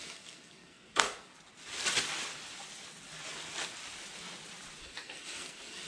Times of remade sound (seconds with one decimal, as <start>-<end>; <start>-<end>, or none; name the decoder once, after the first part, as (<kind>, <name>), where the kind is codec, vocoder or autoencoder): 0.0-1.3 (codec, SNAC); 4.8-5.9